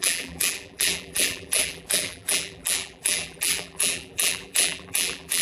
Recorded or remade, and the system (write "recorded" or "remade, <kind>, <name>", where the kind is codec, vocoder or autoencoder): remade, vocoder, BigVGAN v2